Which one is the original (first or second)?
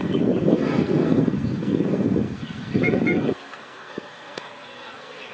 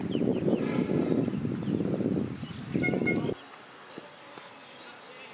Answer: second